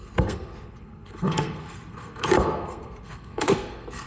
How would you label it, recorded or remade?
remade